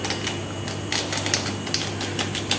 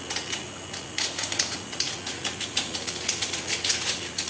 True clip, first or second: first